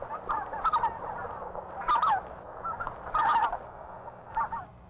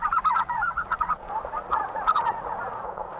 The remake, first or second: second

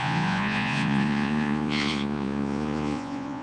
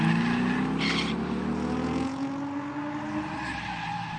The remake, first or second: first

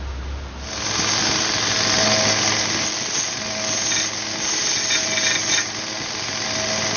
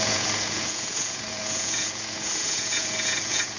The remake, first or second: second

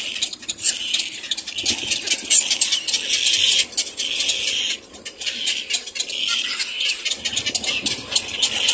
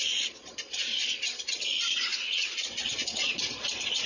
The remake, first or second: second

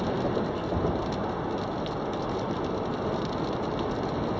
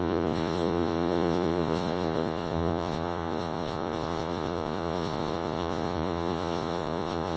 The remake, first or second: second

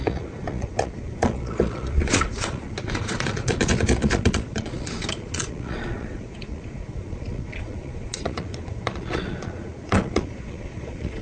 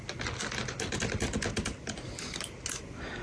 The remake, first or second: first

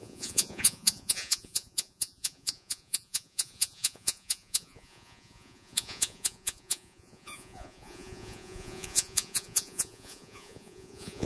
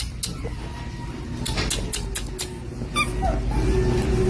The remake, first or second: first